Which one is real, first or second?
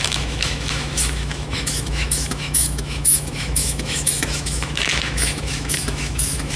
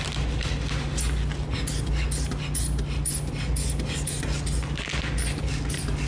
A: second